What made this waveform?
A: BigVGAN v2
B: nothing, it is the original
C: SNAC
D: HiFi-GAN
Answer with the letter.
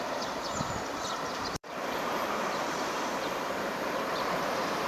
A